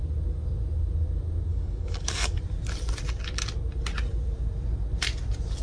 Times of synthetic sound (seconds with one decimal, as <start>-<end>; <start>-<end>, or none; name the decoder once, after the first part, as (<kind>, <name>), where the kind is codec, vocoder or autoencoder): 1.5-2.4 (codec, DAC)